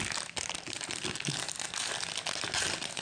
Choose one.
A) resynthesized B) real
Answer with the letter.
B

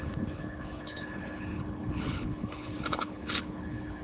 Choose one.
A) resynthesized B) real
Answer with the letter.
A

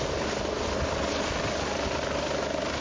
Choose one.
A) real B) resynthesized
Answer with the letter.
A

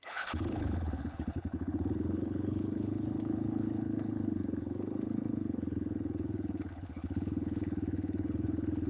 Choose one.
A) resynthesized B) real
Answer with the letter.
A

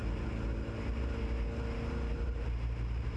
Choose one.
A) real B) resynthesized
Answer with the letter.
A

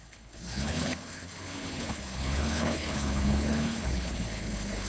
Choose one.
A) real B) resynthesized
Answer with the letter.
B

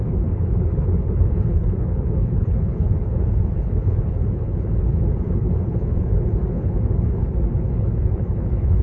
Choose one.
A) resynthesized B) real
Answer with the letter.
A